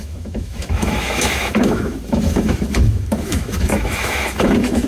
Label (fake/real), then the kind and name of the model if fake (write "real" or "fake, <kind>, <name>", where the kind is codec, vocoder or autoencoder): fake, autoencoder, DAC-VAE